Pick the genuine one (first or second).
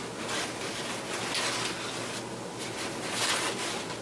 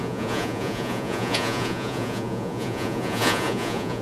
first